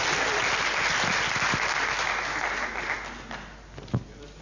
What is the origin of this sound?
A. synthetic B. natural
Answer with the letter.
B